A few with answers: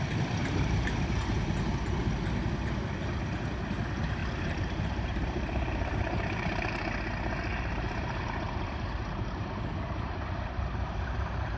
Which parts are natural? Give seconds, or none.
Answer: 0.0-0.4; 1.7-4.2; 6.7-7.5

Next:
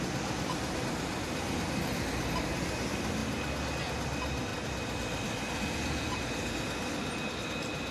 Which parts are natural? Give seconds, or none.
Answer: 0.0-7.9

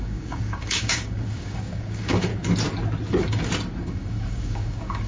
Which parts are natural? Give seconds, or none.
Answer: 2.3-3.8

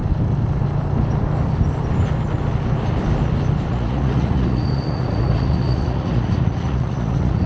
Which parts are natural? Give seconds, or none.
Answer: 0.0-3.7

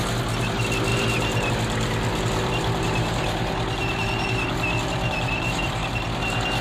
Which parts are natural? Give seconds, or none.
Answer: 0.0-0.9; 1.5-2.1; 6.0-6.6